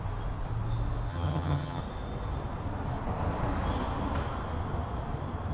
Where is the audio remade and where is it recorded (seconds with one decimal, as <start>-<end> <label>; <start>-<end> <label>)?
0.0-1.1 recorded; 1.1-1.8 remade; 1.8-5.5 recorded